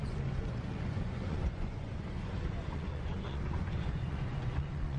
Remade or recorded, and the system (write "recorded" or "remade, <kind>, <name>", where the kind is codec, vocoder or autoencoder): remade, vocoder, Vocos